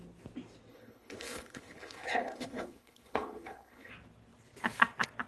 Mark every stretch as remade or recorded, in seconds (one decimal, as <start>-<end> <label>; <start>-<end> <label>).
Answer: 0.0-0.7 recorded; 0.7-3.9 remade; 3.9-5.3 recorded